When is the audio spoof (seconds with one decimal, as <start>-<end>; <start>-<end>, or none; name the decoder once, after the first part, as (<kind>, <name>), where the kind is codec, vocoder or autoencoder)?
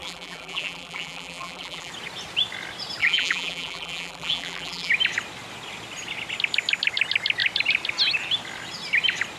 0.0-1.9 (vocoder, BigVGAN v2); 3.0-4.9